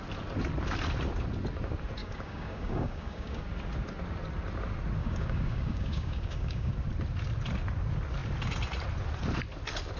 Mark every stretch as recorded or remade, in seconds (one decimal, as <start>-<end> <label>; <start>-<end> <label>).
0.0-2.0 recorded; 2.0-3.4 remade; 3.4-5.0 recorded; 5.0-6.7 remade; 6.7-10.0 recorded